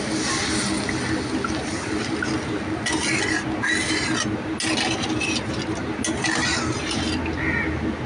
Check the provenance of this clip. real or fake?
real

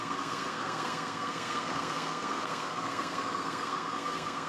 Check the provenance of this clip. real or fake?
fake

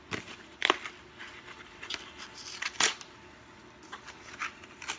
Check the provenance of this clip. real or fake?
real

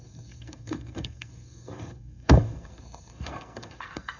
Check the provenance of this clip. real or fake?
fake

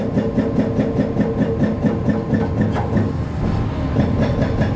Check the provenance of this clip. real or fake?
real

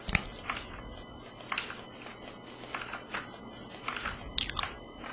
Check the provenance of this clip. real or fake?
real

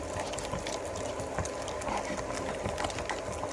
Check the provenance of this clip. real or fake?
real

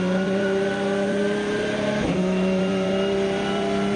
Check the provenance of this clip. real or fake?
fake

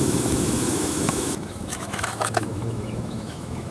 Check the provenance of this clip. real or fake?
fake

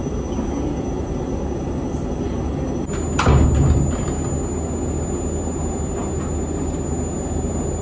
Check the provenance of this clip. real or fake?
real